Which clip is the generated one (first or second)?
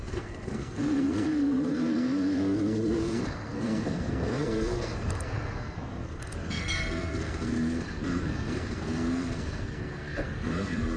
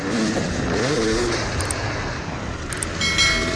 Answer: first